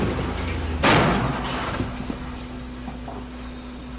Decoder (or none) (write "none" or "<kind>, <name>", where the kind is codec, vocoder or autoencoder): none